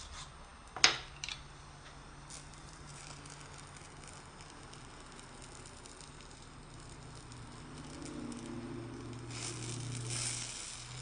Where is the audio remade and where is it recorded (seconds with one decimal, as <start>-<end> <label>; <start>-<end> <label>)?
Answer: 0.0-2.5 recorded; 2.5-3.0 remade; 3.0-11.0 recorded